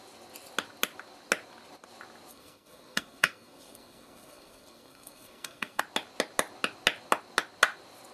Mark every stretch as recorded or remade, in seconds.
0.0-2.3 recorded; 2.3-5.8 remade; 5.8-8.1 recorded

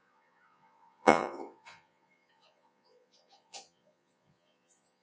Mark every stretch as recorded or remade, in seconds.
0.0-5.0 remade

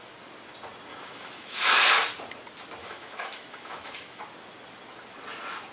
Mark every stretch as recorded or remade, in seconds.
0.0-0.9 recorded; 0.9-1.7 remade; 1.7-2.8 recorded; 2.8-4.2 remade; 4.2-5.7 recorded